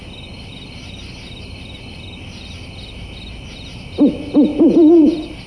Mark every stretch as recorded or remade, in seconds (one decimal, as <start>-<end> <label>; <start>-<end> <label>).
0.0-4.5 recorded; 4.5-5.1 remade; 5.1-5.5 recorded

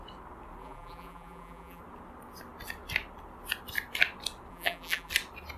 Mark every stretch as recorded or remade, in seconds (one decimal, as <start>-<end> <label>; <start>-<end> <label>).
0.0-0.6 recorded; 0.6-1.8 remade; 1.8-4.5 recorded; 4.5-5.1 remade; 5.1-5.6 recorded